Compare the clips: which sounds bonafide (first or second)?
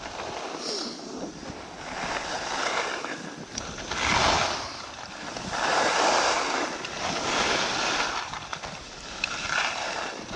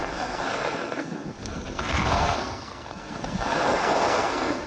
first